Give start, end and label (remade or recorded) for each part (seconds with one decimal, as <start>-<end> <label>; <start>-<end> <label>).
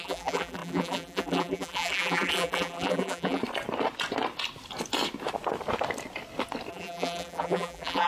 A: 0.0-3.4 remade; 3.4-6.7 recorded; 6.7-8.1 remade